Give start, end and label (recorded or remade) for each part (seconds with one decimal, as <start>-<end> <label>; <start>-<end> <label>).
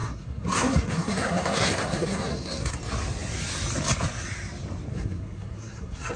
0.0-2.8 remade; 2.8-4.9 recorded; 4.9-6.2 remade